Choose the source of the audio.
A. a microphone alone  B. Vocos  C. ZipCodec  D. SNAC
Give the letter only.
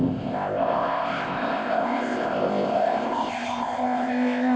C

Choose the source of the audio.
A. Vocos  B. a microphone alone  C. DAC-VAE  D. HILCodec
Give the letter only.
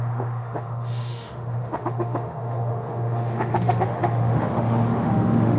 C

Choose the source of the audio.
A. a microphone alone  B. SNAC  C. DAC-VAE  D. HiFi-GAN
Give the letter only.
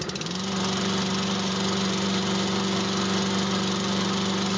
A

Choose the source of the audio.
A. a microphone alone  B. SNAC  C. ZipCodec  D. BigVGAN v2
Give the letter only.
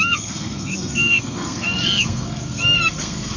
B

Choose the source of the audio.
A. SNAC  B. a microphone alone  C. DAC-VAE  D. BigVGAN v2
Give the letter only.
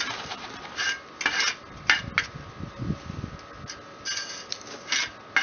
B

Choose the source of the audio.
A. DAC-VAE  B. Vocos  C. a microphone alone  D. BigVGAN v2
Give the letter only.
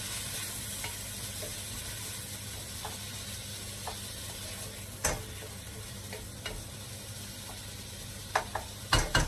C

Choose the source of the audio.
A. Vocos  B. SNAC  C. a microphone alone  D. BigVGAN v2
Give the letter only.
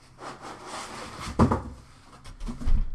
C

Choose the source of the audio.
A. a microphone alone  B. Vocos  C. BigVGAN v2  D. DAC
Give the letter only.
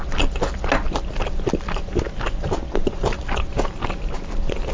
A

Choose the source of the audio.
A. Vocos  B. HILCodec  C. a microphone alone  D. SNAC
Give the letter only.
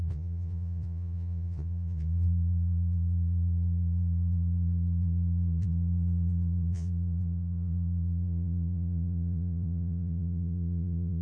A